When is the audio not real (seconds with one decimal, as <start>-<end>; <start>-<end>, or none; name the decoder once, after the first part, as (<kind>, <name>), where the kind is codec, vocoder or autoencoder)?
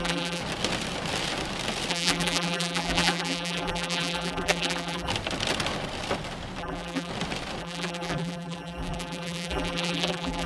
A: 0.0-0.4 (vocoder, BigVGAN v2); 1.9-5.1; 6.6-7.1; 7.6-10.5